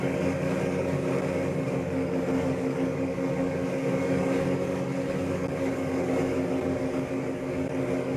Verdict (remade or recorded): remade